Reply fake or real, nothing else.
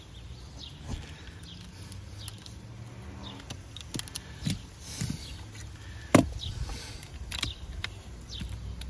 real